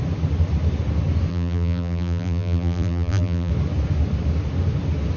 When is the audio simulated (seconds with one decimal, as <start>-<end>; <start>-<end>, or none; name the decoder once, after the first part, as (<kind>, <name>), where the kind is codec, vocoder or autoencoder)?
1.3-3.5 (vocoder, BigVGAN v2)